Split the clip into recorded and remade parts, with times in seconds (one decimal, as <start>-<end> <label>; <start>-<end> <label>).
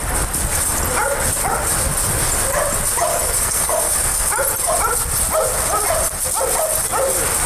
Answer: 0.0-3.1 recorded; 3.1-4.3 remade; 4.3-7.5 recorded